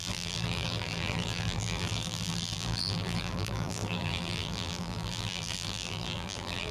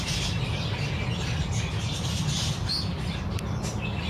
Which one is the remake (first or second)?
first